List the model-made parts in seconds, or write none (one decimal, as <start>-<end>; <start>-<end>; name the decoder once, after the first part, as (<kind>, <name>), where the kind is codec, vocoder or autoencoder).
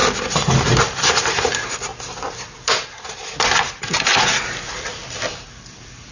0.8-1.9 (vocoder, BigVGAN v2); 3.8-6.1